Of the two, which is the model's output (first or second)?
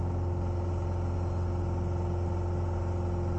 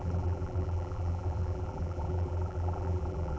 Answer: second